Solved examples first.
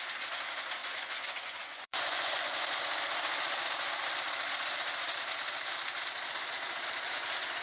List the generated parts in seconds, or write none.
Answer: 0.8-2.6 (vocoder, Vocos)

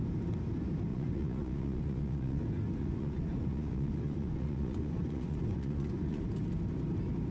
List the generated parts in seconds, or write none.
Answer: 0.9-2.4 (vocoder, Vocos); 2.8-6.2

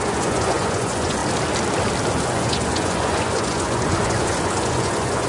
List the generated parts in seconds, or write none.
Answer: 0.0-1.2 (vocoder, Vocos); 2.1-5.3

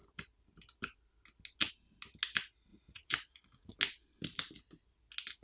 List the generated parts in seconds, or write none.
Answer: 2.7-3.8 (vocoder, Vocos)

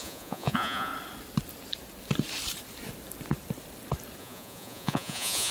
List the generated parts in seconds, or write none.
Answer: 0.0-0.9 (vocoder, Vocos); 4.2-5.5

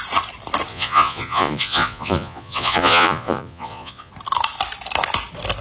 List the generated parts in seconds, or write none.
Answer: 0.7-4.1 (vocoder, Vocos)

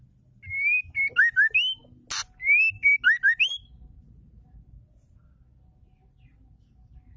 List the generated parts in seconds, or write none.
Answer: none